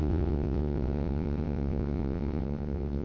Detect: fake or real fake